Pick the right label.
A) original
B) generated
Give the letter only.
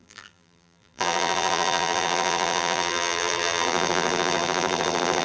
B